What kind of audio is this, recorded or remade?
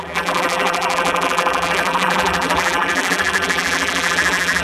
remade